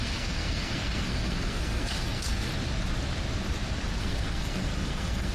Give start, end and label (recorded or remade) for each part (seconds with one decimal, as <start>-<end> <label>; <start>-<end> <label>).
0.0-2.5 remade; 2.5-4.0 recorded; 4.0-5.3 remade